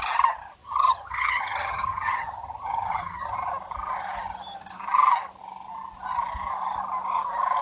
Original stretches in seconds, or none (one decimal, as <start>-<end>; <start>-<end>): 0.0-0.6; 3.5-7.6